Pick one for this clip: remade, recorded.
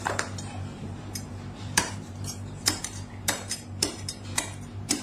remade